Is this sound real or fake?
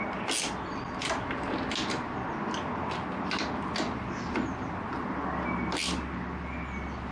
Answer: real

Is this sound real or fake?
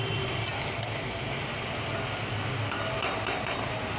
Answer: real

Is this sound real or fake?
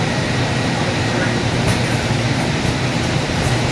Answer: fake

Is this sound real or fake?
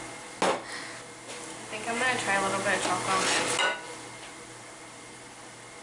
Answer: real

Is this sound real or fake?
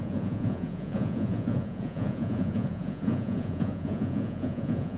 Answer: fake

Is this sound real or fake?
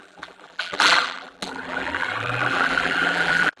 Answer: fake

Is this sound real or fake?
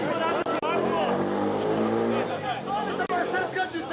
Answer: real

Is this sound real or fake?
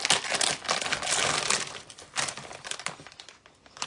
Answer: real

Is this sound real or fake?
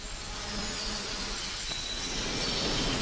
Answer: fake